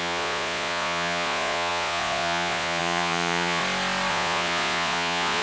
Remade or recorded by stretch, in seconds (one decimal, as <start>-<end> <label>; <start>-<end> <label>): 0.0-3.6 remade; 3.6-4.1 recorded; 4.1-5.4 remade